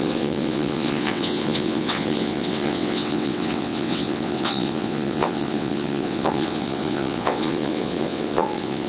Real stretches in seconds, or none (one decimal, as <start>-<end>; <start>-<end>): none